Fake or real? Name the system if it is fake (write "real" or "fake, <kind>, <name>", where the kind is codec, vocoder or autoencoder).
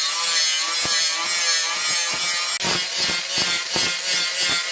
real